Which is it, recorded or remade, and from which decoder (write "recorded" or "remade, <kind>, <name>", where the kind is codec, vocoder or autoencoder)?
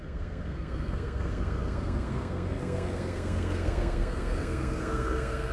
remade, codec, SNAC